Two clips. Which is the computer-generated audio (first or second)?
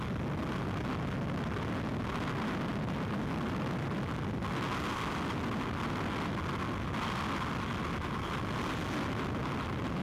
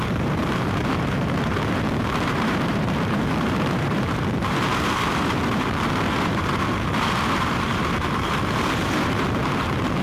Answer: second